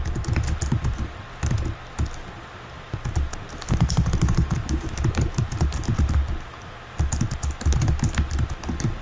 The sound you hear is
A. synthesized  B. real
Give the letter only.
B